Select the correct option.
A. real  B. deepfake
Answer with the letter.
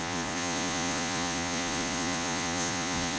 B